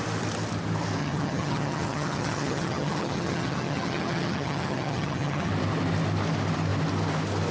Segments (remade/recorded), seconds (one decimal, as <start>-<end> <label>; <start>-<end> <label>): 0.0-1.0 recorded; 1.0-5.5 remade; 5.5-7.5 recorded